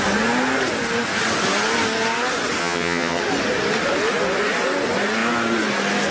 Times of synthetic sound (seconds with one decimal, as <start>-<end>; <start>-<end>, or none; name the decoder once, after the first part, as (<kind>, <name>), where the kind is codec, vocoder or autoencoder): 2.6-3.2 (vocoder, HiFi-GAN)

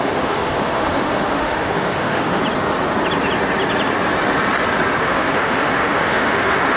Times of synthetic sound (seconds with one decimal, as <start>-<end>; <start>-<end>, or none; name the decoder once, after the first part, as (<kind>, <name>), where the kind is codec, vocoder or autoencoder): 0.0-2.4 (autoencoder, DAC-VAE); 5.0-6.8

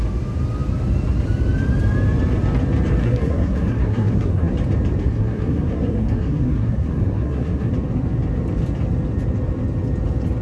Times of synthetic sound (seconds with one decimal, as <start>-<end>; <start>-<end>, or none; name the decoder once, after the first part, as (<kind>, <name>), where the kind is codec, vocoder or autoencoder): 3.0-4.5 (codec, SNAC); 5.0-7.7

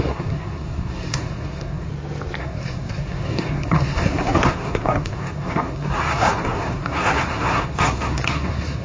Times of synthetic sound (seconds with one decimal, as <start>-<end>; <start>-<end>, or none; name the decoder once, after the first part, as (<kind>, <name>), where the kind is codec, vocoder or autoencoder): 0.0-1.9 (codec, SNAC); 2.4-8.8

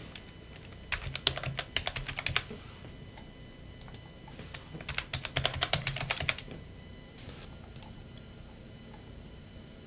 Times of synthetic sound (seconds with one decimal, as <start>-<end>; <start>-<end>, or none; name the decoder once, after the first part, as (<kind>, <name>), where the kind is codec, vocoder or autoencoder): 5.5-9.9 (vocoder, BigVGAN v2)

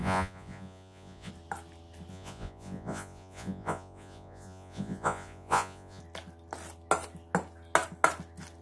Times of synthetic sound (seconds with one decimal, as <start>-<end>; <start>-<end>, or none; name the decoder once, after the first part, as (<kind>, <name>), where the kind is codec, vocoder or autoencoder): 0.0-1.3 (vocoder, Vocos); 2.1-6.0

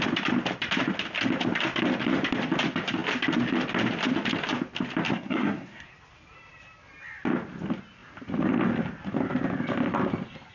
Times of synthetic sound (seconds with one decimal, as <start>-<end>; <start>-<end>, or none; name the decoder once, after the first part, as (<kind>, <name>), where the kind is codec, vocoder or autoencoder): 5.1-5.9 (codec, SNAC)

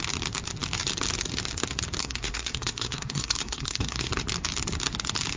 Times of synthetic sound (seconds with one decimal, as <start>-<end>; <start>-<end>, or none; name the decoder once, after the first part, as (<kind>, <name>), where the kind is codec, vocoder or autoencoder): 2.0-4.1 (codec, SNAC)